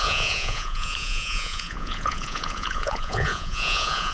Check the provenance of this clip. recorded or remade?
remade